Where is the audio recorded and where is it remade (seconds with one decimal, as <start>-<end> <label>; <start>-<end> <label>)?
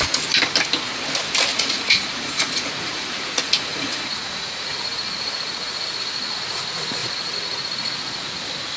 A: 0.0-1.5 recorded; 1.5-6.6 remade; 6.6-7.0 recorded; 7.0-8.3 remade; 8.3-8.8 recorded